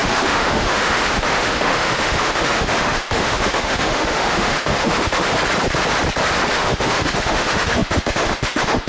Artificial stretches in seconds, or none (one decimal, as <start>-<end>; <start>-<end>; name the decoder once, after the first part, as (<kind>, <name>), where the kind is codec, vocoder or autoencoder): 0.0-5.3 (autoencoder, DAC-VAE); 6.5-8.9